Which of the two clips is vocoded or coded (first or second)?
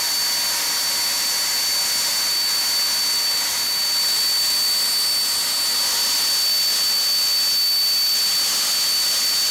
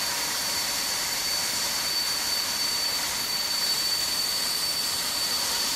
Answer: second